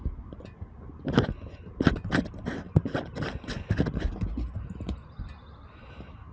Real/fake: real